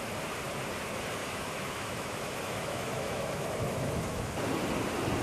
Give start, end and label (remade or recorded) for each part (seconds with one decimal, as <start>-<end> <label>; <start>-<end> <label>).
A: 0.0-1.2 recorded; 1.2-4.3 remade; 4.3-5.2 recorded